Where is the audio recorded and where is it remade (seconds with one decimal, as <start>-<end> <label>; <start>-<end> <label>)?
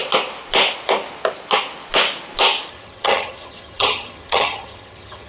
0.0-2.7 recorded; 2.7-5.3 remade